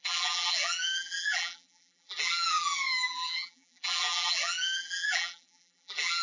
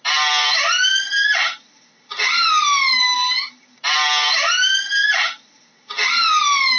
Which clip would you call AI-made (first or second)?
first